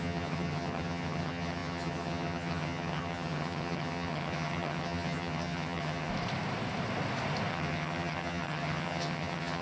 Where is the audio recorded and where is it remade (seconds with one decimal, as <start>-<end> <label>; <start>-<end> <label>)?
0.0-6.1 remade; 6.1-7.5 recorded; 7.5-9.6 remade

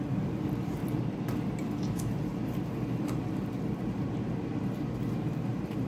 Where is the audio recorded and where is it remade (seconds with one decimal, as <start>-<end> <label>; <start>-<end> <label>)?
0.0-0.8 remade; 0.8-1.6 recorded; 1.6-2.3 remade; 2.3-5.5 recorded; 5.5-5.9 remade

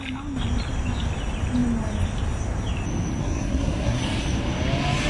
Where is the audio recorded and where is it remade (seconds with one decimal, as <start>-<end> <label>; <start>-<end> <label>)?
0.0-3.2 recorded; 3.2-4.0 remade; 4.0-5.1 recorded

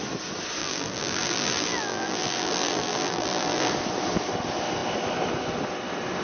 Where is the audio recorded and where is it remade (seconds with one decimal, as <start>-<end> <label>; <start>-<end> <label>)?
0.0-0.6 recorded; 0.6-3.7 remade; 3.7-6.2 recorded

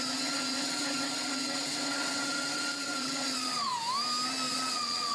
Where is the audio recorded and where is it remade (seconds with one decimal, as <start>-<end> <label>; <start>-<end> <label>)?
0.0-3.7 remade; 3.7-4.5 recorded; 4.5-5.1 remade

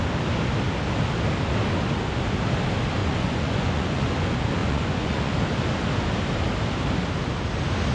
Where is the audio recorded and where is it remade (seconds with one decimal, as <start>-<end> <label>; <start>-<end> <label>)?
0.0-3.0 recorded; 3.0-4.0 remade; 4.0-4.6 recorded; 4.6-5.3 remade; 5.3-7.9 recorded

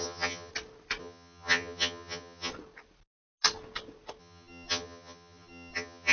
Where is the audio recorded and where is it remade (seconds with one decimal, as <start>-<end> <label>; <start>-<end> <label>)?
0.0-0.5 remade; 0.5-1.0 recorded; 1.0-2.5 remade; 2.5-4.2 recorded; 4.2-6.1 remade